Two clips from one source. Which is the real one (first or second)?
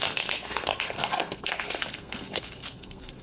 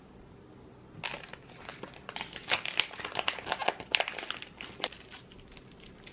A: second